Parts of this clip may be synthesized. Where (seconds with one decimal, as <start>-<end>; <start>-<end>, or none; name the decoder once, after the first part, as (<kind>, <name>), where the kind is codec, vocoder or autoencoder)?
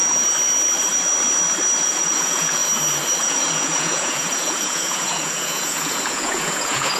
1.8-2.6 (vocoder, Vocos); 3.2-7.0